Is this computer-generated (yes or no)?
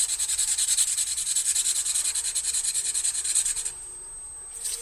no